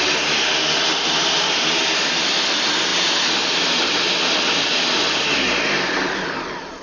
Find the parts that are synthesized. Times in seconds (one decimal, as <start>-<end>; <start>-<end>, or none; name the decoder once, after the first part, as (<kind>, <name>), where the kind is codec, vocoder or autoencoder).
none